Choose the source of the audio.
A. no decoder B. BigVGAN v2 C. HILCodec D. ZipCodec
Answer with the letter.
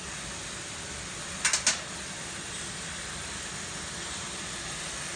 A